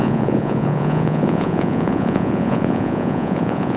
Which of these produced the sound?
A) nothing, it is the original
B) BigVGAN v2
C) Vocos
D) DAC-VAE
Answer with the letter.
C